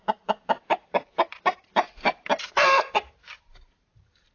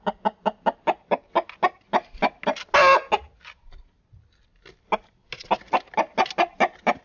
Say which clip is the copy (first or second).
first